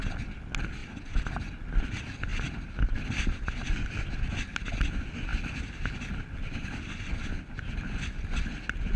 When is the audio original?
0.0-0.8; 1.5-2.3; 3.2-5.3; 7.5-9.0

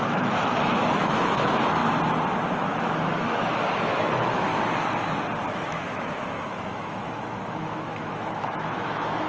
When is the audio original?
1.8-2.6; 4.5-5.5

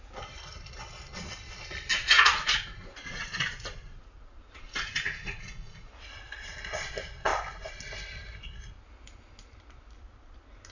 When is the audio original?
0.0-1.9; 5.9-10.7